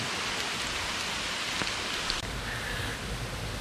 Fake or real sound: real